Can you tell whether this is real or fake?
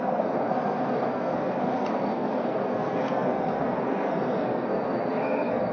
fake